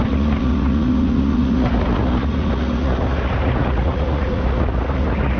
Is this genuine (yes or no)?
no